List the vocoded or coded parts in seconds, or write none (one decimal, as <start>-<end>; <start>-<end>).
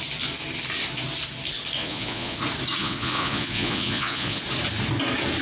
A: 1.8-2.4; 2.8-4.4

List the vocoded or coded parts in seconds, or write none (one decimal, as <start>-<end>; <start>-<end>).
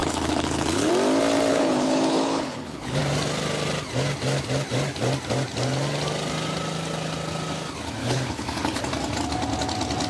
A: 0.0-0.9; 1.5-3.0; 8.0-8.8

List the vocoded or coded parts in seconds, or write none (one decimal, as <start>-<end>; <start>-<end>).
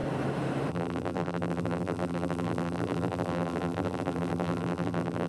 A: 0.7-5.3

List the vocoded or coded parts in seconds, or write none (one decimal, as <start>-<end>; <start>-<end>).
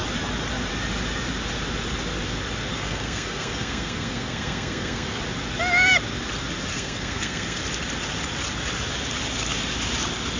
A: 2.7-5.2; 6.7-7.6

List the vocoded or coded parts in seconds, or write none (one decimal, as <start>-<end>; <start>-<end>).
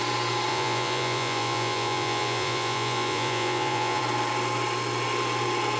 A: 0.5-4.0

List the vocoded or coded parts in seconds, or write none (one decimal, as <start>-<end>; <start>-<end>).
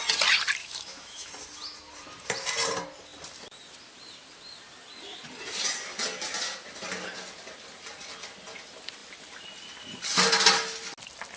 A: 0.6-1.3